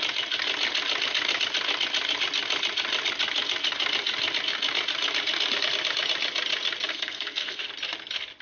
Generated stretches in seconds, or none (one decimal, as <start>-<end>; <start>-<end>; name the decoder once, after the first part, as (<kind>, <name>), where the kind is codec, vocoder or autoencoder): 6.9-7.7 (codec, SNAC)